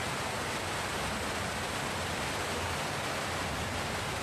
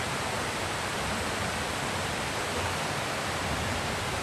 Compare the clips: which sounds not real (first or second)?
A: second